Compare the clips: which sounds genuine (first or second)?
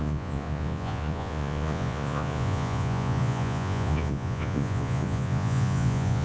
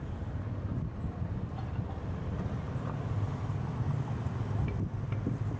second